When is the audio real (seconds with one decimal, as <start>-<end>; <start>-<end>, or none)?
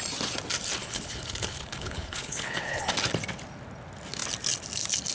0.0-0.8; 2.9-5.1